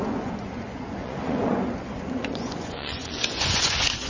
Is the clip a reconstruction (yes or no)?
yes